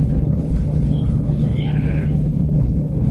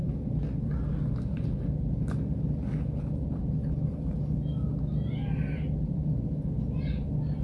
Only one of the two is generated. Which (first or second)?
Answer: first